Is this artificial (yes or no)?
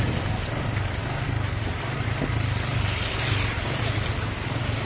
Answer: no